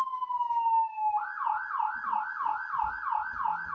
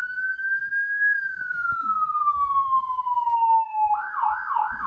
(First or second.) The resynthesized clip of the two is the second